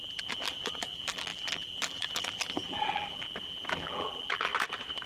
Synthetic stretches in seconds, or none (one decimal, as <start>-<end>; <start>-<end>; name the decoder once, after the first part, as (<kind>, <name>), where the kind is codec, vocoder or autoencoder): 0.0-4.5 (vocoder, BigVGAN v2)